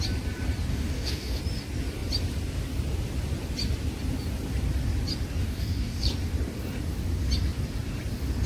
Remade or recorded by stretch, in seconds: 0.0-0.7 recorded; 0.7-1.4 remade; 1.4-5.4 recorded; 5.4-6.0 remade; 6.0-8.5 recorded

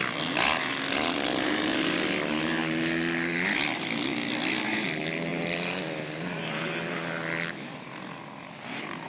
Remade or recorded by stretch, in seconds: 0.0-9.1 recorded